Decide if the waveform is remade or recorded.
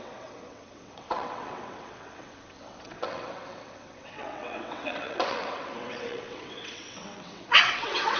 remade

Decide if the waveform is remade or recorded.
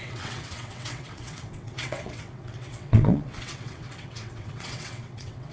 remade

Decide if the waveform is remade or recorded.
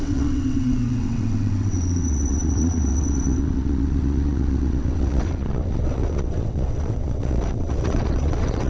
remade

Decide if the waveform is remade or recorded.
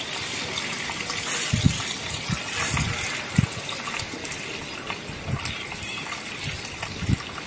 recorded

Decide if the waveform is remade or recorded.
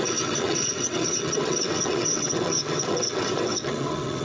remade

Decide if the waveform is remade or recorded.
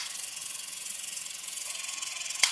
remade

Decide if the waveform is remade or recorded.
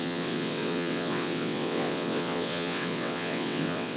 remade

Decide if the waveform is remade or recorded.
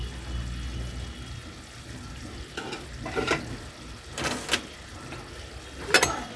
recorded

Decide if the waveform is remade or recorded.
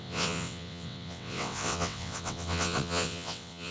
remade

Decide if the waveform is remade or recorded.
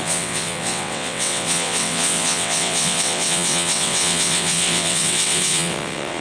remade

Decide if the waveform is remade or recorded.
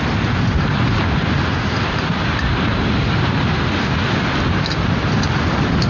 recorded